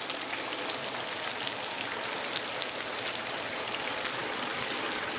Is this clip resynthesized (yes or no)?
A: no